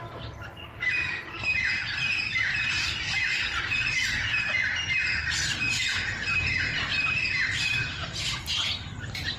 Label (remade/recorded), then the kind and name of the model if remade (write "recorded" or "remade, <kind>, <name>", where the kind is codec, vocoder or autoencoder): remade, vocoder, BigVGAN v2